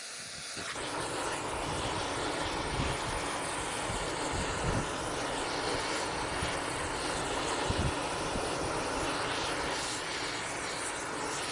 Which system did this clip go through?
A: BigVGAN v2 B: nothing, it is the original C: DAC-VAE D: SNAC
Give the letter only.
B